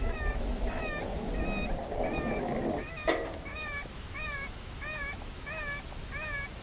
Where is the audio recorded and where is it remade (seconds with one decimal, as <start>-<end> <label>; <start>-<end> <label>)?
0.0-1.0 remade; 1.0-3.5 recorded; 3.5-5.5 remade; 5.5-6.6 recorded